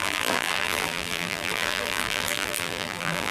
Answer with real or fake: fake